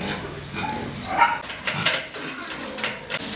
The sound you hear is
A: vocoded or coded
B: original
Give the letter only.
B